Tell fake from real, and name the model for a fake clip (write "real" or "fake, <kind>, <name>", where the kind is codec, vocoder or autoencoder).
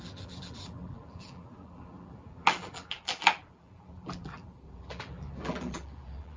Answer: fake, vocoder, BigVGAN v2